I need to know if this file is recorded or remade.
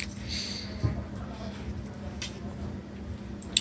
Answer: recorded